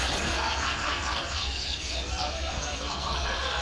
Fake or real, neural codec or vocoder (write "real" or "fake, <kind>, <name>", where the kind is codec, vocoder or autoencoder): fake, codec, SNAC